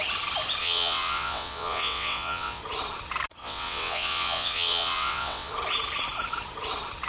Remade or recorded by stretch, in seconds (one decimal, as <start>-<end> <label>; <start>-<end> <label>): 0.0-0.6 recorded; 0.6-2.6 remade; 2.6-3.4 recorded; 3.4-5.5 remade; 5.5-7.1 recorded